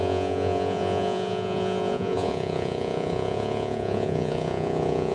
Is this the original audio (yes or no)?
no